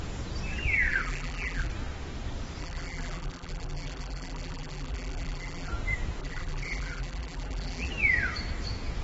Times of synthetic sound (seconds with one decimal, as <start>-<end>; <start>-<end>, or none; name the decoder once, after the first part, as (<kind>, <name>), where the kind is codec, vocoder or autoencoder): 0.9-1.7 (vocoder, BigVGAN v2); 2.6-5.7; 6.2-7.9